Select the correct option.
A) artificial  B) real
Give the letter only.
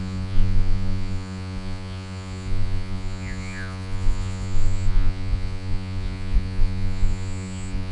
A